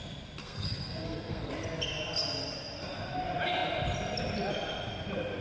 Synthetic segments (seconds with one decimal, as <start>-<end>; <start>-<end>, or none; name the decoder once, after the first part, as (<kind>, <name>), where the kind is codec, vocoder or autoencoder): 0.4-1.5 (codec, SNAC)